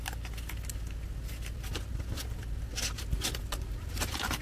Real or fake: real